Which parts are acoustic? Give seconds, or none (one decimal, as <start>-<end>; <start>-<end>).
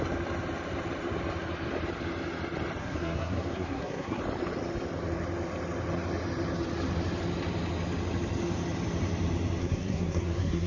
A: 0.0-2.8; 4.2-9.6